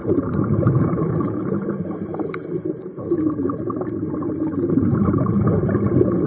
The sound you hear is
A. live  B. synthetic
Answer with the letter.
B